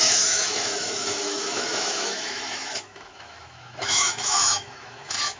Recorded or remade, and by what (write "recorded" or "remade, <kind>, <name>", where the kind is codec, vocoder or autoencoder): remade, autoencoder, DAC-VAE